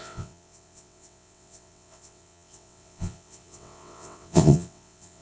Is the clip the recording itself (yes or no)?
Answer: no